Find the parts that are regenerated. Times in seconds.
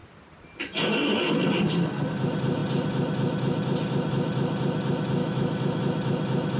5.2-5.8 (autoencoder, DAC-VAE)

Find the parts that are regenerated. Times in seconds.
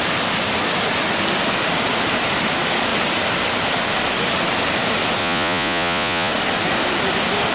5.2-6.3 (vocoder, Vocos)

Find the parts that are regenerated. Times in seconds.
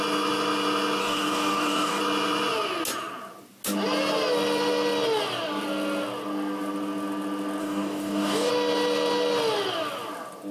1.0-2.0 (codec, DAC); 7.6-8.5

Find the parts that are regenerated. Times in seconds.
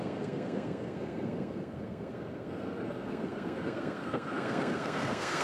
0.0-5.4 (codec, SNAC)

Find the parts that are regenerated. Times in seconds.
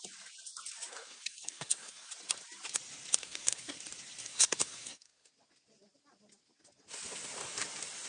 0.9-2.1 (codec, SNAC); 3.2-3.8; 4.2-5.3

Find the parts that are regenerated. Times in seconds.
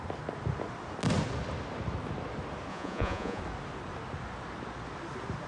2.7-3.4 (vocoder, Vocos)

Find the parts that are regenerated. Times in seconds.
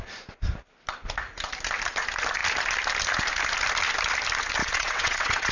4.6-5.5 (vocoder, WaveNeXt)